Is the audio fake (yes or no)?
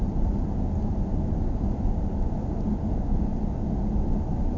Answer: yes